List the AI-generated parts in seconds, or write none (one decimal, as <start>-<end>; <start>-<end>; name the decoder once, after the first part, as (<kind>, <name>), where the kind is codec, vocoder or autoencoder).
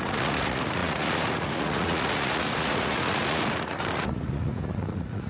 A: 0.0-5.3 (vocoder, Vocos)